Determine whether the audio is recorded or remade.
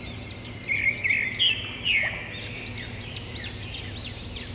recorded